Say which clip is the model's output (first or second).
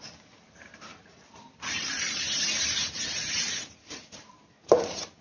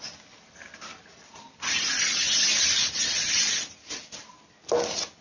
first